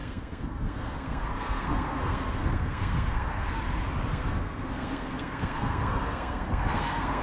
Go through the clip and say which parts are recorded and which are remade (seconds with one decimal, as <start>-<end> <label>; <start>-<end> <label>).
0.0-3.6 remade; 3.6-4.1 recorded; 4.1-7.2 remade